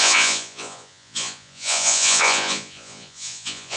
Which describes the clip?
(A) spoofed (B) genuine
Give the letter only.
A